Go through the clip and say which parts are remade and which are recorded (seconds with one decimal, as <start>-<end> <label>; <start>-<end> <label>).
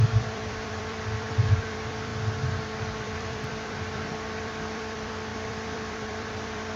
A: 0.0-6.8 remade